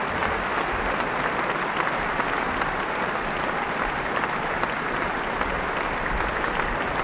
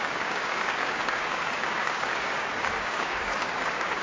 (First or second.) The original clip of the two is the first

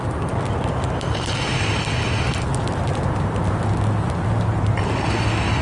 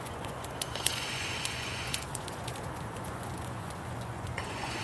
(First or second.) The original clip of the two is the first